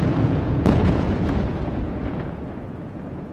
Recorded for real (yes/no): no